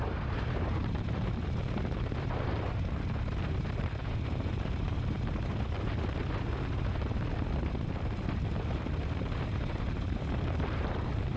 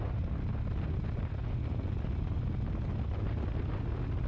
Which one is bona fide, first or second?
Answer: second